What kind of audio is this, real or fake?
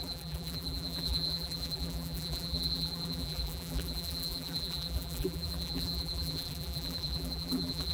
fake